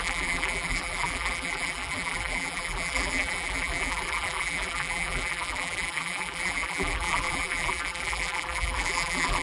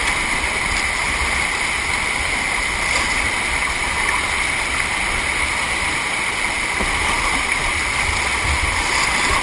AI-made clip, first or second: first